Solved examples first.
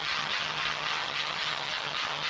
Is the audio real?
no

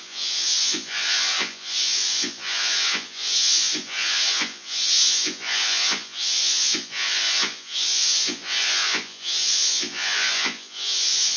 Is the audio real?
no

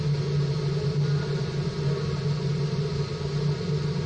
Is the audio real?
yes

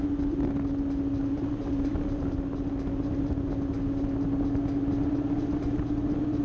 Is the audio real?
yes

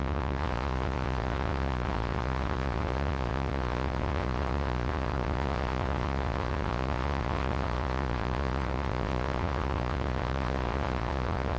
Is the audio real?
no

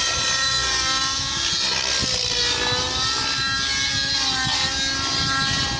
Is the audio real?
yes